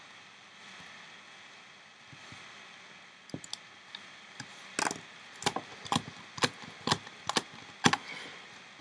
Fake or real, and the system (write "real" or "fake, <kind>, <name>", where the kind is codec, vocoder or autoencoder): real